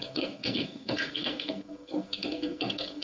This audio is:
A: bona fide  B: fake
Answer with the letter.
B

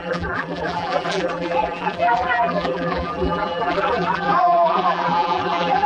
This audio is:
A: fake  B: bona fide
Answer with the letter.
A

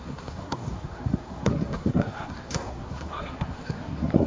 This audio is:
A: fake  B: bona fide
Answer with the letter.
A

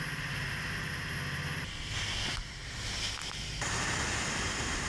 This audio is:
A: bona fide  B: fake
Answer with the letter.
A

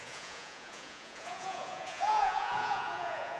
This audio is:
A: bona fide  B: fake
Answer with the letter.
B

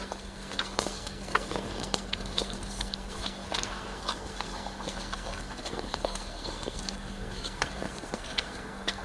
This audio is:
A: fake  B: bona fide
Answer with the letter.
A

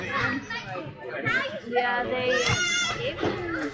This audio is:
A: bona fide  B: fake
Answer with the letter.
A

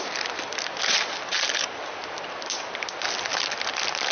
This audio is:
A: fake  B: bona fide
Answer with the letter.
B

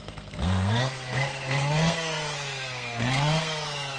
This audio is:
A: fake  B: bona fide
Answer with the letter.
A